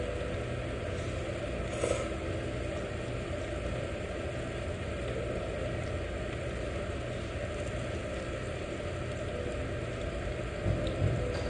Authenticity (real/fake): real